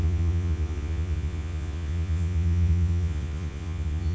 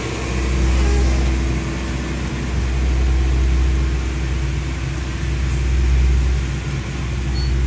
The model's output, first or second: first